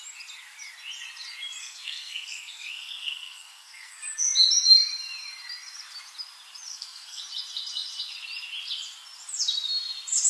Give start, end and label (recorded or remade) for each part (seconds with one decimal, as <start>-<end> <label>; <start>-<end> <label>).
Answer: 0.0-1.6 recorded; 1.6-4.0 remade; 4.0-6.7 recorded; 6.7-7.2 remade; 7.2-10.3 recorded